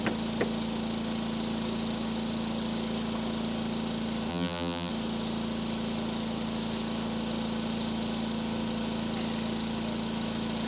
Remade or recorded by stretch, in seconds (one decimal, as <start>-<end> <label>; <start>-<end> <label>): 0.0-4.3 recorded; 4.3-4.9 remade; 4.9-10.7 recorded

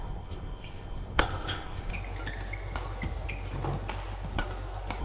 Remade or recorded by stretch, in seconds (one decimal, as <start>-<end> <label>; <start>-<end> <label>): 0.0-1.9 remade; 1.9-5.0 recorded